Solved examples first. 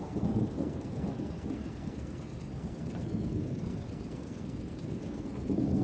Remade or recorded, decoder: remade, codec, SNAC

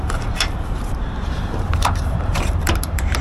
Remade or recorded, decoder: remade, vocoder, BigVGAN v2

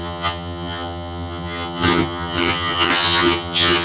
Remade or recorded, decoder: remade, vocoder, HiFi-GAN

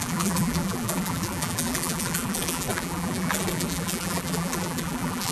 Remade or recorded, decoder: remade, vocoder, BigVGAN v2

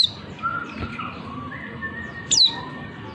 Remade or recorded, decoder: recorded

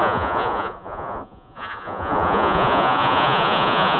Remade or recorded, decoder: remade, vocoder, Vocos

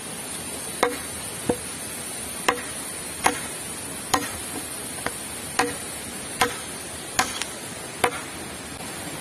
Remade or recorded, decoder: recorded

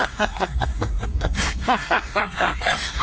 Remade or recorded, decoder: remade, codec, SNAC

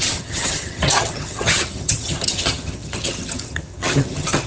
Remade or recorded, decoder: remade, vocoder, HiFi-GAN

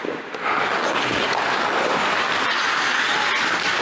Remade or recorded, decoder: recorded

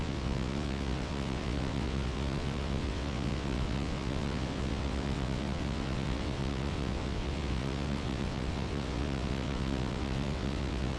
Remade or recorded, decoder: remade, vocoder, WaveNeXt